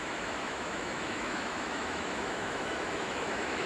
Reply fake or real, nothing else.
fake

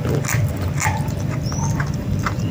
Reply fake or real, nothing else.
real